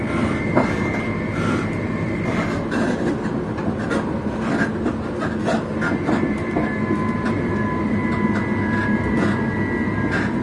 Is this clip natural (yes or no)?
yes